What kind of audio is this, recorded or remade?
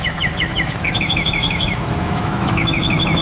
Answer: remade